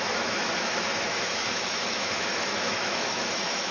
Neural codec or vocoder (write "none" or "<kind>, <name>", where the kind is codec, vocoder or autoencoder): autoencoder, DAC-VAE